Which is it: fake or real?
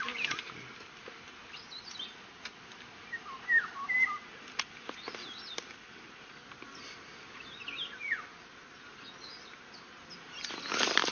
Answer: real